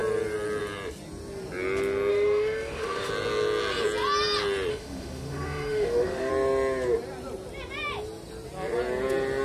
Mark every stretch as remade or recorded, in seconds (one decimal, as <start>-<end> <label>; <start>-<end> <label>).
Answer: 0.0-2.1 recorded; 2.1-3.1 remade; 3.1-4.7 recorded; 4.7-6.3 remade; 6.3-9.4 recorded